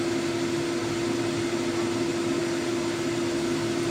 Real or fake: real